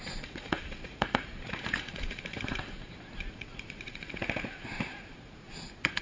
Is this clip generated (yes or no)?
yes